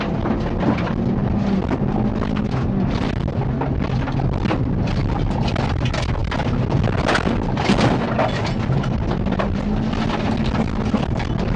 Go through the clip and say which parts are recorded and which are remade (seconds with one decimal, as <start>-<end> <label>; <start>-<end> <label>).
0.0-11.6 recorded